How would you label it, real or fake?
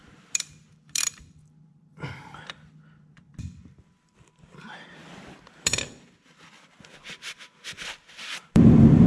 fake